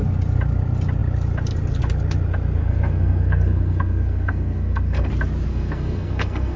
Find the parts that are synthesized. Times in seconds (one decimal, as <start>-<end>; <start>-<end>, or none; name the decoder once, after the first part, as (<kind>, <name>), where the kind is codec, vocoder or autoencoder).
2.6-5.1 (codec, SNAC); 5.5-6.6